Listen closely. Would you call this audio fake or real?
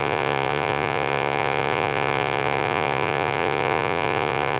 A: fake